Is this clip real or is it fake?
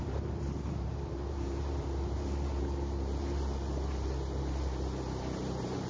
fake